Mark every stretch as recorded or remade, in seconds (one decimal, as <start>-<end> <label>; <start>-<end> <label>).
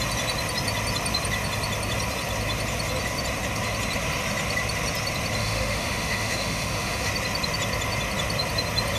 0.0-5.4 recorded; 5.4-7.1 remade; 7.1-9.0 recorded